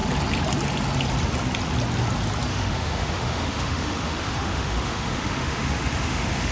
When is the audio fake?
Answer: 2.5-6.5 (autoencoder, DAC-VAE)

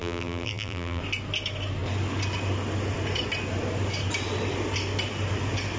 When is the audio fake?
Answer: 0.0-1.0 (vocoder, BigVGAN v2)

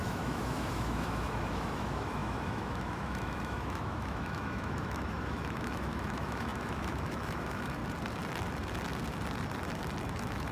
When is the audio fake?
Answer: 0.0-7.8 (autoencoder, DAC-VAE); 10.1-10.5

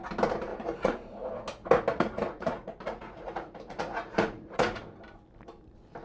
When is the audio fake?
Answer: 0.5-1.3 (vocoder, Vocos); 1.9-4.8

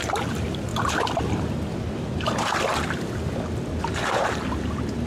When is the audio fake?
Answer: 0.0-0.7 (vocoder, BigVGAN v2); 3.8-5.1